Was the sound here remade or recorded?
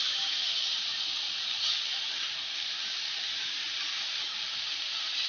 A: recorded